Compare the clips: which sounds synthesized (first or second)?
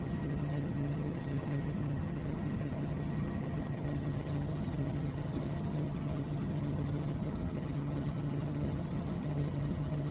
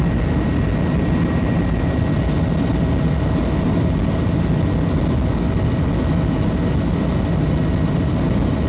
first